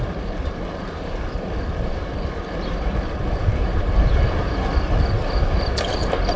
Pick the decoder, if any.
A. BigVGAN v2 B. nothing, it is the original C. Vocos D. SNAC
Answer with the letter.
A